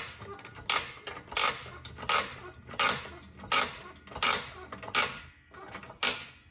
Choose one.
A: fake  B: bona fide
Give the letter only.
B